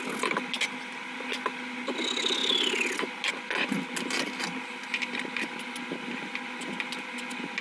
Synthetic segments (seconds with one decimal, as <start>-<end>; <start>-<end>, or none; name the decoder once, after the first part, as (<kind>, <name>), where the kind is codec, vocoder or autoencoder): none